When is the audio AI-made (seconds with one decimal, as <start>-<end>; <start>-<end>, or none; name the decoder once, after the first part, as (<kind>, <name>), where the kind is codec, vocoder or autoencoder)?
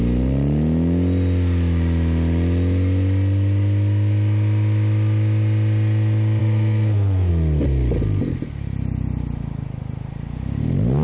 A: 6.4-7.3 (codec, SNAC)